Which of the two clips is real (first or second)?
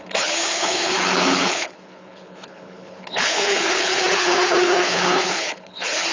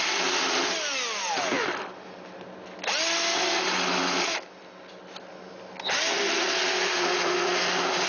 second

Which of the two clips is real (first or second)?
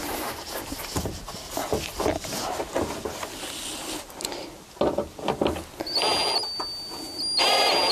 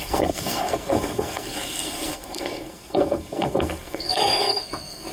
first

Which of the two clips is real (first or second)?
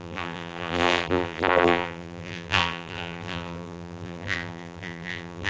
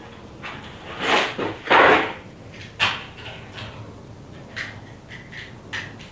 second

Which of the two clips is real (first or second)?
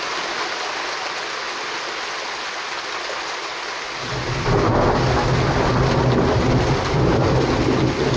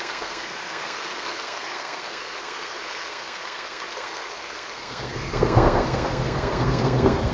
first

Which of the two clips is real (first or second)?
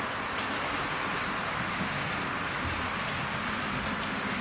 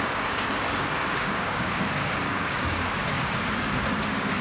first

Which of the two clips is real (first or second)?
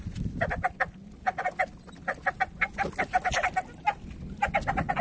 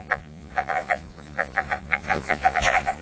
first